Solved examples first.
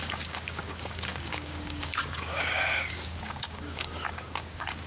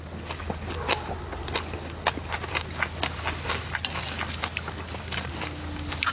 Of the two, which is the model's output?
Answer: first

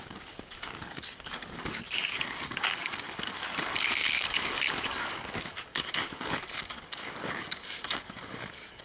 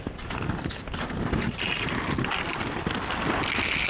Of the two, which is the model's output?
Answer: first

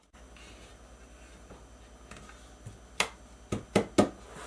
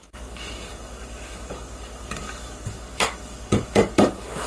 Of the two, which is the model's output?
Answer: second